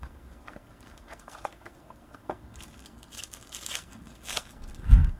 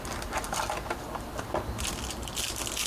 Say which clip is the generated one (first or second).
first